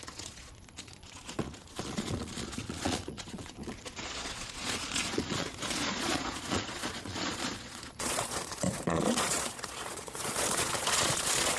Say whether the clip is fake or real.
fake